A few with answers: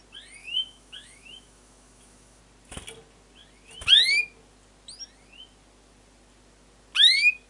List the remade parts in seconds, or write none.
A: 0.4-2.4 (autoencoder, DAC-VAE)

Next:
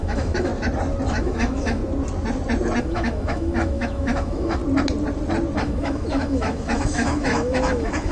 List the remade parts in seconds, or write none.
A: 0.0-0.5 (autoencoder, DAC-VAE); 1.1-1.8; 2.8-4.6; 5.6-8.1

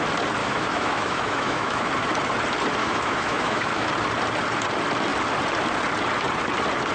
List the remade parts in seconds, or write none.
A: 0.4-1.9 (autoencoder, DAC-VAE); 2.8-3.9

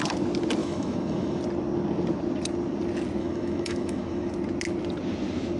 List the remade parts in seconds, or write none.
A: 0.6-1.4 (autoencoder, DAC-VAE); 3.2-4.3